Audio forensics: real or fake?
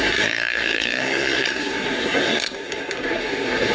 fake